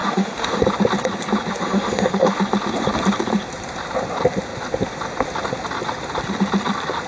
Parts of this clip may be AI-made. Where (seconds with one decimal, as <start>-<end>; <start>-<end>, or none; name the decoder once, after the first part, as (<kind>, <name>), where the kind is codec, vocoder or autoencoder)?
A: 0.0-0.6 (autoencoder, DAC-VAE); 1.5-2.4